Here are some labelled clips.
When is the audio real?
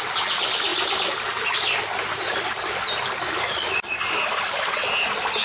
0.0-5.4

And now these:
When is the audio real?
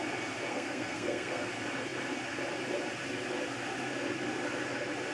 0.0-0.5; 1.5-5.1